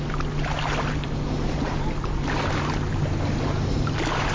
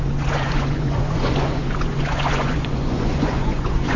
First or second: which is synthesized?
second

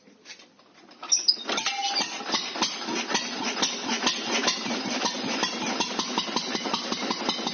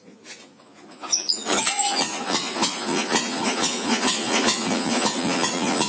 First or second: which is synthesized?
second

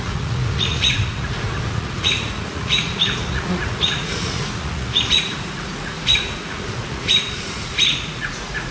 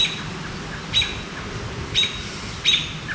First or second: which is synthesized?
first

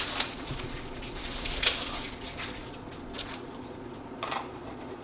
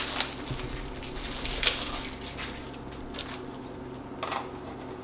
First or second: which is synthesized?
first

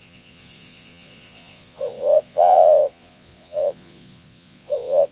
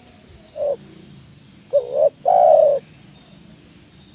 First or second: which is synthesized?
first